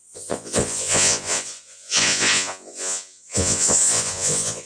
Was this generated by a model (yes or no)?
yes